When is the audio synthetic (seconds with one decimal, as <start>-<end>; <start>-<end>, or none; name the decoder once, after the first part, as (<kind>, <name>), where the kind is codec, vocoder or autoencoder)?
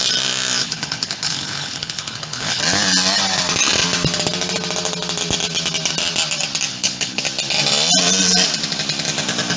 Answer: 0.6-2.6 (codec, HILCodec); 6.7-7.2